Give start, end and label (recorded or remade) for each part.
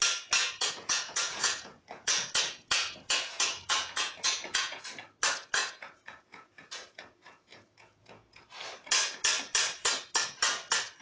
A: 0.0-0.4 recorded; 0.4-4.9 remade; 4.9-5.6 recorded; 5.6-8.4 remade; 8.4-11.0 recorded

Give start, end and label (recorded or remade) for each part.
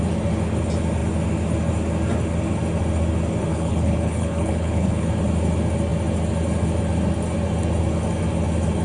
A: 0.0-3.5 recorded; 3.5-5.1 remade; 5.1-8.8 recorded